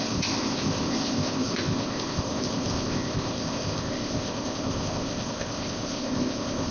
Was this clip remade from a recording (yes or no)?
yes